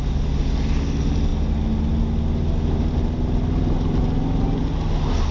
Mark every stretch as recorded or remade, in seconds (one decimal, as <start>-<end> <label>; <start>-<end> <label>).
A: 0.0-5.3 recorded